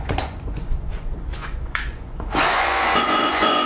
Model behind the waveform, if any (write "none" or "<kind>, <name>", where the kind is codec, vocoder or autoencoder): vocoder, Vocos